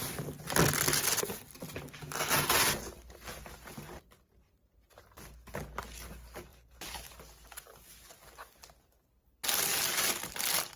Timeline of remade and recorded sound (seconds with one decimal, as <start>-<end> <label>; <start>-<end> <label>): 0.0-6.5 recorded; 6.5-7.2 remade; 7.2-10.8 recorded